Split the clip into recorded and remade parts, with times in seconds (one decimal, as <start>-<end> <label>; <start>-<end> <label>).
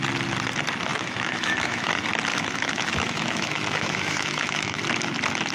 0.0-0.9 recorded; 0.9-1.9 remade; 1.9-2.3 recorded; 2.3-4.8 remade; 4.8-5.5 recorded